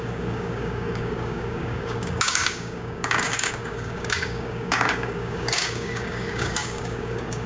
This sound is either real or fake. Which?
fake